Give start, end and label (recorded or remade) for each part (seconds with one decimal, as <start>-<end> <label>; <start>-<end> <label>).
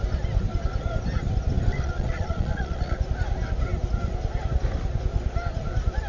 0.0-1.7 recorded; 1.7-3.0 remade; 3.0-6.1 recorded